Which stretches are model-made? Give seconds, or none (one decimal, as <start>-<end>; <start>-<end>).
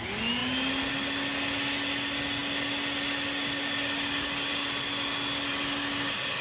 none